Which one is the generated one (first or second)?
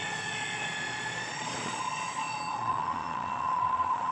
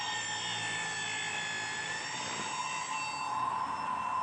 first